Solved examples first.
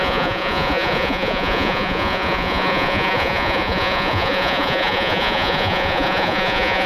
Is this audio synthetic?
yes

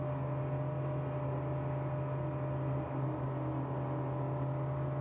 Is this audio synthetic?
no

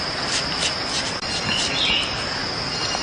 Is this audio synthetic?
no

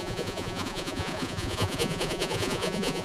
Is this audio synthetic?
yes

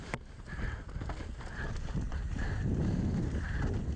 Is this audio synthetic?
no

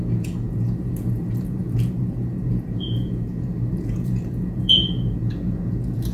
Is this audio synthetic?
yes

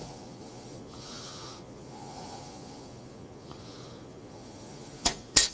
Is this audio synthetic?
yes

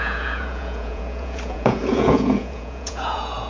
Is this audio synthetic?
yes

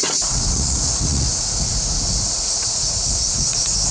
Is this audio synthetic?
yes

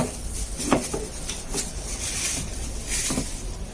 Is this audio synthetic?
no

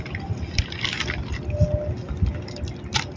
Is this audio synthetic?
no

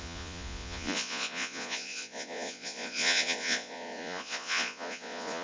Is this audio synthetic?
yes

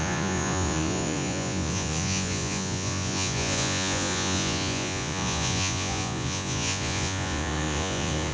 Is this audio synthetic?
yes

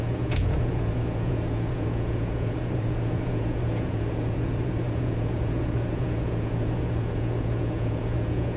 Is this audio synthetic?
yes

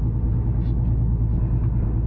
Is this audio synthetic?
no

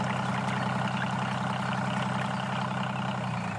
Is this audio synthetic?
no